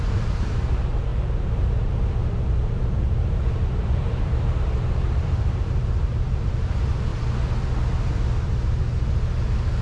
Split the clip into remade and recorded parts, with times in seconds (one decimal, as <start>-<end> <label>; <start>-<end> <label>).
0.0-7.1 remade; 7.1-9.8 recorded